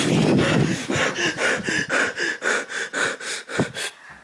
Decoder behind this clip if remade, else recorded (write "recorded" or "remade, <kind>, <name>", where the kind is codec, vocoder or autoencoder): recorded